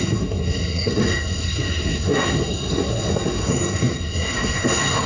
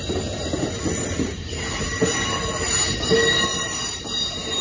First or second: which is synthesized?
first